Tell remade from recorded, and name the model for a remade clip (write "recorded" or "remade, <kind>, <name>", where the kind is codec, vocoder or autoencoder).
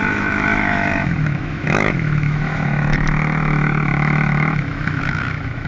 remade, autoencoder, DAC-VAE